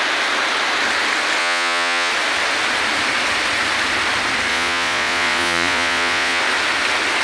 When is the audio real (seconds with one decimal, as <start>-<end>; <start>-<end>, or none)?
0.0-1.4; 2.1-4.5; 6.4-7.2